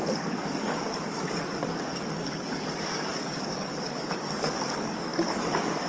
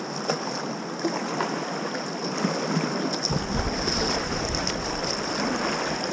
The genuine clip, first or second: second